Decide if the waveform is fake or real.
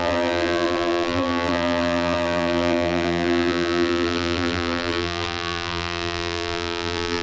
fake